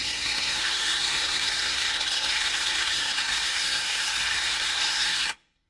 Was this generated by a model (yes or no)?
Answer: yes